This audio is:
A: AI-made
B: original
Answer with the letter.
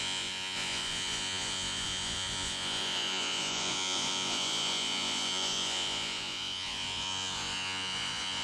A